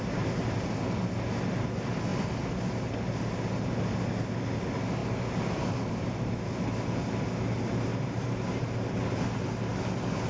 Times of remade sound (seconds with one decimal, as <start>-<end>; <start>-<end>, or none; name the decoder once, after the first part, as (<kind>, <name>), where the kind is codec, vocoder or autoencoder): 5.0-6.3 (vocoder, BigVGAN v2); 7.9-8.7